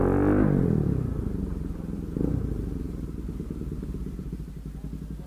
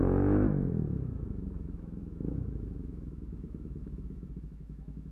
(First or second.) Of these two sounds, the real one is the first